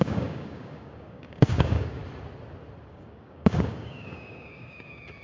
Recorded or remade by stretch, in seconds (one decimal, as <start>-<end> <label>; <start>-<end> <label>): 0.0-2.0 remade; 2.0-2.9 recorded; 2.9-5.2 remade